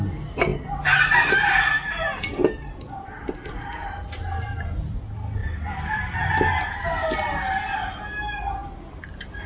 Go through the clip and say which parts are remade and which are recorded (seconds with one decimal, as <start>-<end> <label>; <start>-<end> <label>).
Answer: 0.0-2.3 recorded; 2.3-3.8 remade; 3.8-5.4 recorded; 5.4-6.3 remade; 6.3-9.5 recorded